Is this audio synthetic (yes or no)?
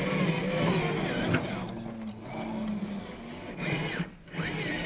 no